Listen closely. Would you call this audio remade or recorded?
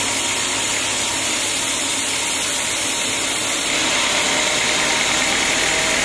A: recorded